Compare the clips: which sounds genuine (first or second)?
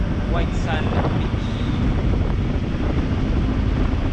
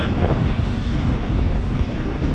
first